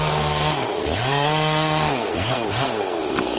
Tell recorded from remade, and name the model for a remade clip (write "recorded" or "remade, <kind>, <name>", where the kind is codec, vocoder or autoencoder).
remade, codec, SNAC